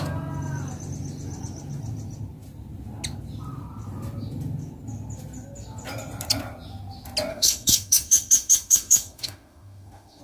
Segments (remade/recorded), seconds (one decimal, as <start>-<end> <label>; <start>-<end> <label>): 0.0-7.3 recorded; 7.3-10.2 remade